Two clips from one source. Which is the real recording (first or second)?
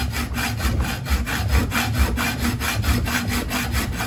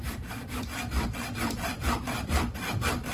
first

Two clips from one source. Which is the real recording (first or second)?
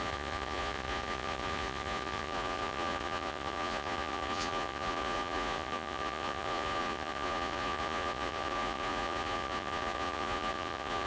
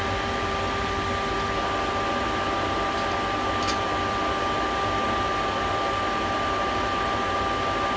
second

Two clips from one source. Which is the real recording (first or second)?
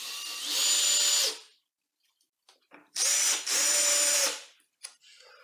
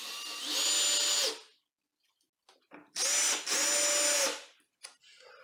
second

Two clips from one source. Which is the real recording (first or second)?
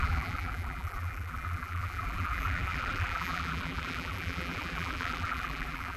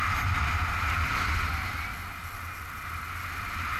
second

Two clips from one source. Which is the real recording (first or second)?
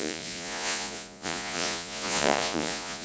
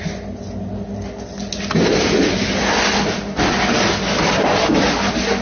second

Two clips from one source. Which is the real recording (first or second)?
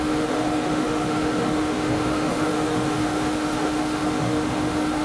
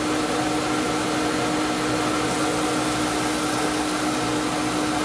second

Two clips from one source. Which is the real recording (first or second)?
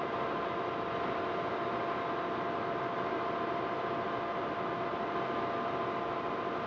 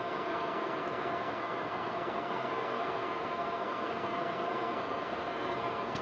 first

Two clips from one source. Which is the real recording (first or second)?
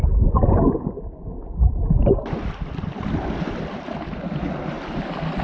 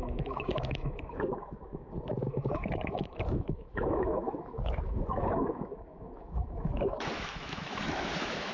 first